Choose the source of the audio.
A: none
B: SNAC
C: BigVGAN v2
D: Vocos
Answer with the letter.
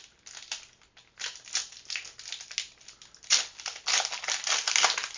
A